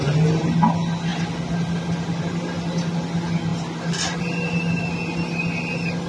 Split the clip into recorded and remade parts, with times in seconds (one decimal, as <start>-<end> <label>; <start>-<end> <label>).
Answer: 0.0-6.1 recorded